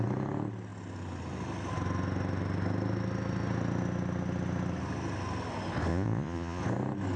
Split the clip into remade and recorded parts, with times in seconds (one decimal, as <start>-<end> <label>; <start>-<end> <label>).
0.0-5.9 recorded; 5.9-6.6 remade; 6.6-7.2 recorded